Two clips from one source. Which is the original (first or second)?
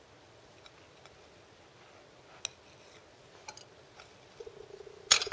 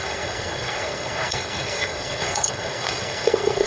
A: first